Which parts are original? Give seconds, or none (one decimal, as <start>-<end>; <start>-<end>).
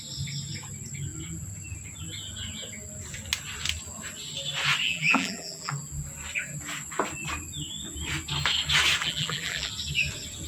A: 0.0-4.8; 5.7-9.0; 9.7-10.5